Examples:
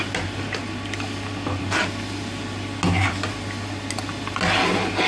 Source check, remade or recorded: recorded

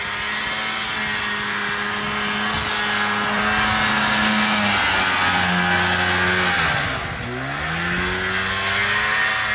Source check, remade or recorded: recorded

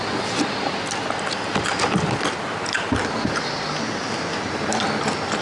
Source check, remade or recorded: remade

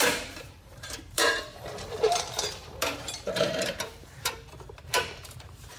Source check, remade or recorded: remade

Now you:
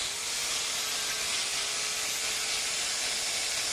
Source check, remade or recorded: recorded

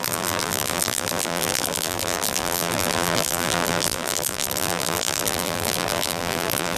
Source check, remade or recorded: remade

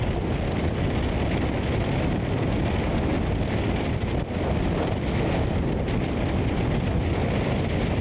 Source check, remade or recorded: recorded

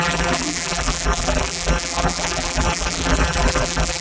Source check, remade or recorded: remade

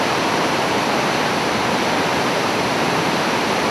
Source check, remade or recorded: remade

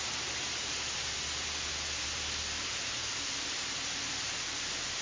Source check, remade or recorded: remade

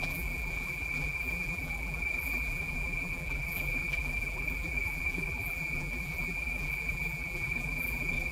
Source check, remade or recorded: remade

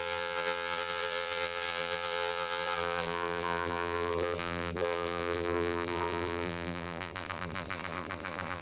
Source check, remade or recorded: remade